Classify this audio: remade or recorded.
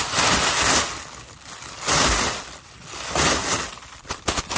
recorded